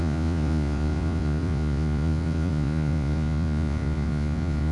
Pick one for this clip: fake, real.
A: fake